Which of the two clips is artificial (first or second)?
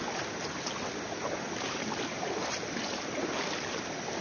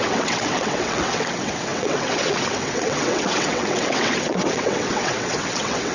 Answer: second